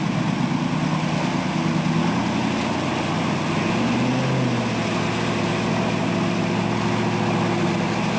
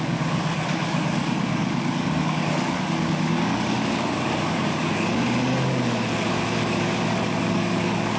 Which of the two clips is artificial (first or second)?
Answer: second